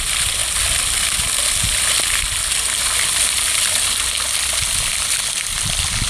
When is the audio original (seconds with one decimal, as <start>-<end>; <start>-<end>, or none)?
0.0-6.1